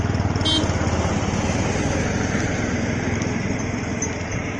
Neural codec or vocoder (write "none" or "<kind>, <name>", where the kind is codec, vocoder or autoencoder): none